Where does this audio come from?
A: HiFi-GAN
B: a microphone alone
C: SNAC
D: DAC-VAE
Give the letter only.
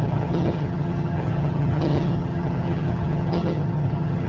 A